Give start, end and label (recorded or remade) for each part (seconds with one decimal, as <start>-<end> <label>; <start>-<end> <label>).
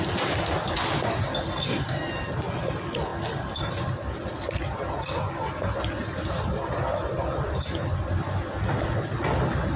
0.0-9.8 recorded